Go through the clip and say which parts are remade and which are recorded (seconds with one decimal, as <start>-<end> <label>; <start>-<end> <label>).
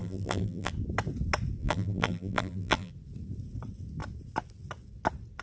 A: 0.0-0.7 remade; 0.7-1.6 recorded; 1.6-2.9 remade; 2.9-5.4 recorded